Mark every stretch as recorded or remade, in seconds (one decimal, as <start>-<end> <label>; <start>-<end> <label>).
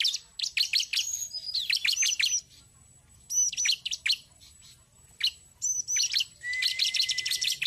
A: 0.0-7.7 recorded